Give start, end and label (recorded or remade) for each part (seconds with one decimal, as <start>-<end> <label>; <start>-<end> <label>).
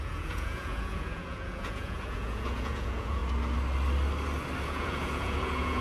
0.0-3.2 remade; 3.2-4.6 recorded; 4.6-5.8 remade